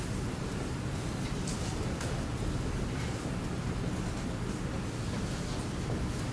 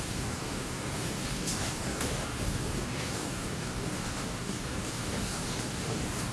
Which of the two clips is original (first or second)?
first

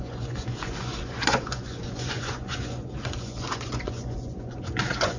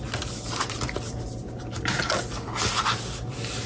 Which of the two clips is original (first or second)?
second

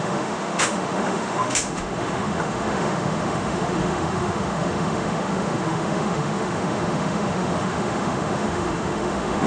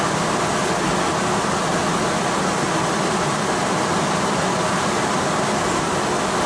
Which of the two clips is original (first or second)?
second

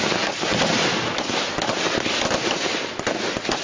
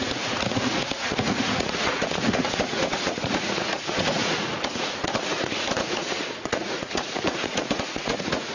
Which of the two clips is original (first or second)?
first